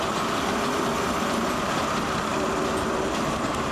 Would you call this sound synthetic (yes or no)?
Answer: no